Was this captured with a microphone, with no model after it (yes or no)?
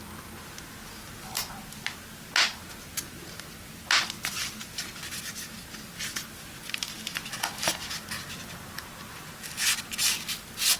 yes